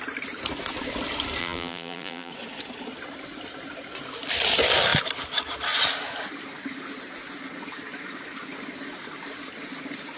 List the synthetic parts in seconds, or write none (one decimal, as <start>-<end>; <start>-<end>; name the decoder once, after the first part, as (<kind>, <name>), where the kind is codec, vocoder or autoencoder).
1.4-2.3 (vocoder, BigVGAN v2)